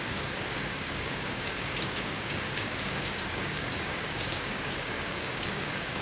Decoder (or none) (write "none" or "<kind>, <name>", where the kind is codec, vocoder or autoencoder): codec, DAC